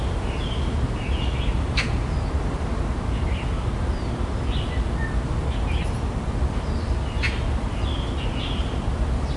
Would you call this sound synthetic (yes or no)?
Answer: no